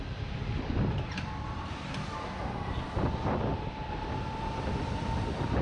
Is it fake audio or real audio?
real